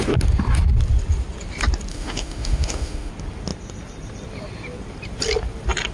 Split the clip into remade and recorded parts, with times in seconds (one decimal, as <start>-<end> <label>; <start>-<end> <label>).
0.0-1.9 recorded; 1.9-3.1 remade; 3.1-5.9 recorded